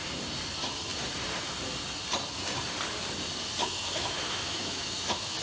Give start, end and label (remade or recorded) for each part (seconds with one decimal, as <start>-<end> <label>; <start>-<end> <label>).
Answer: 0.0-3.6 recorded; 3.6-5.4 remade